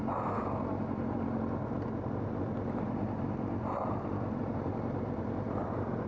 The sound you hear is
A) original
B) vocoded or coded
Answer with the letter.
A